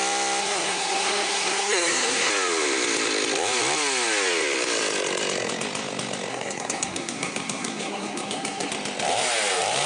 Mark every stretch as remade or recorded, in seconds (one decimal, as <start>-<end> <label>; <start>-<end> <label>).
0.0-0.4 recorded; 0.4-2.3 remade; 2.3-6.3 recorded; 6.3-8.7 remade; 8.7-9.9 recorded